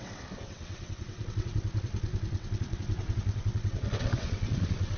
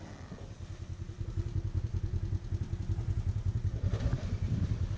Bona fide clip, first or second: second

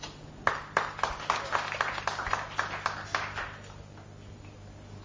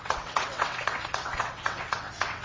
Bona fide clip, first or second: first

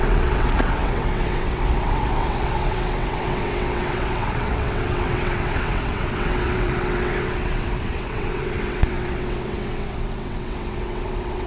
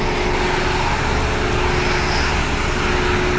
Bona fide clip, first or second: second